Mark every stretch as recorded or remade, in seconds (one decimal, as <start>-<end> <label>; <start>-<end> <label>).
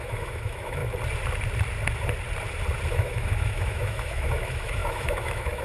0.0-0.8 remade; 0.8-2.9 recorded; 2.9-5.6 remade